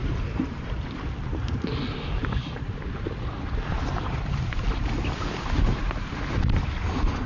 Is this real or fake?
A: real